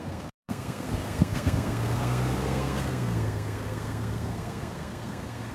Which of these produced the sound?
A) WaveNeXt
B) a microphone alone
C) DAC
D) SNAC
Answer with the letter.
D